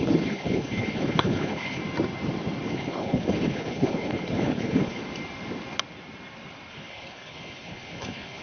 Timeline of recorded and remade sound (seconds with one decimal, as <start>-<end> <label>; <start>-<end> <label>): 0.0-1.8 remade; 1.8-2.7 recorded; 2.7-5.0 remade; 5.0-6.7 recorded; 6.7-8.4 remade